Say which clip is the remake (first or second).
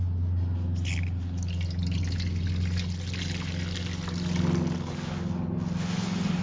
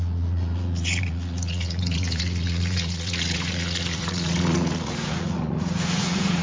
second